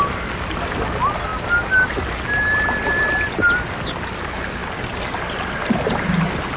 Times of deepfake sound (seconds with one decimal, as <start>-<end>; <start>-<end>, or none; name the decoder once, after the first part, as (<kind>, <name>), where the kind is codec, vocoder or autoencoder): none